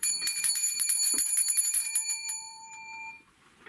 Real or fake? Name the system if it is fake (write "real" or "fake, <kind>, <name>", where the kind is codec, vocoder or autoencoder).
fake, vocoder, BigVGAN v2